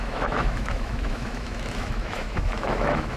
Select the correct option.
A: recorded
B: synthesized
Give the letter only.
B